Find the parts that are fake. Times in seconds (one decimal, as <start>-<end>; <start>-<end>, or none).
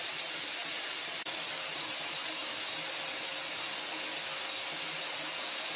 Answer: 0.0-2.4; 5.0-5.8